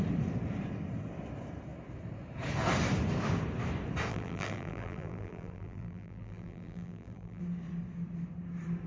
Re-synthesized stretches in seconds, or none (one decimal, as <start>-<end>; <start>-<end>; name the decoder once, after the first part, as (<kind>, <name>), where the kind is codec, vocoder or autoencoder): 4.1-7.4 (vocoder, BigVGAN v2)